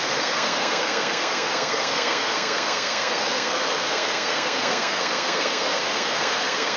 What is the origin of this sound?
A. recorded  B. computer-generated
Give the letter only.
B